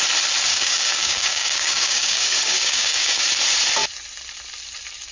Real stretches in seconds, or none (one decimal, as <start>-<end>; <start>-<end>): 0.0-0.5; 3.2-5.1